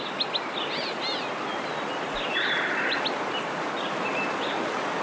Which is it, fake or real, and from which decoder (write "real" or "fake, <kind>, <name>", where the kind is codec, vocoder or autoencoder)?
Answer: real